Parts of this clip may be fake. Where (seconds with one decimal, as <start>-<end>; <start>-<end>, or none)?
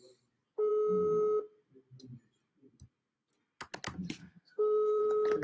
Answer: 4.2-5.0